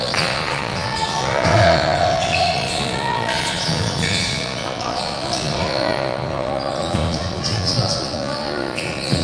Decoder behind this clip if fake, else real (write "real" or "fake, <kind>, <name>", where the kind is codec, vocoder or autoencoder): fake, vocoder, Vocos